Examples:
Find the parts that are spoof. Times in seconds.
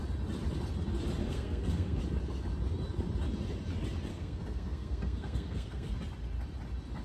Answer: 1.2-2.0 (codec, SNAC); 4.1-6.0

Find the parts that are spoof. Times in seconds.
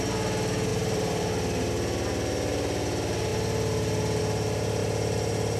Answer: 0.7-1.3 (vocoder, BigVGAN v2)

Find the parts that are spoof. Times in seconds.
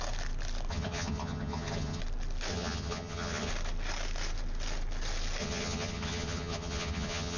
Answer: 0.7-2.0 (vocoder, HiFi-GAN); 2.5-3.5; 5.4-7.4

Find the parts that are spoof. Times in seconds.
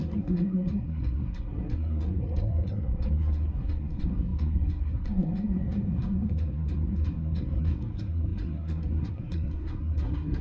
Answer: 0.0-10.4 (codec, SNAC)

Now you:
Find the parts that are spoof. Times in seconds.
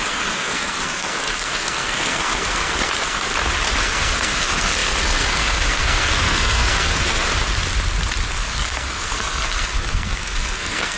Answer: 0.0-3.3 (codec, SNAC); 3.8-7.3; 8.4-11.0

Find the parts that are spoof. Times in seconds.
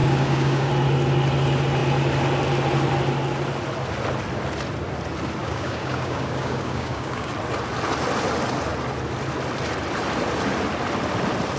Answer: 0.0-0.7 (codec, DAC); 5.4-7.3